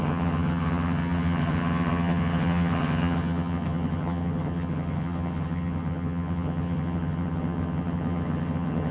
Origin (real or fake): fake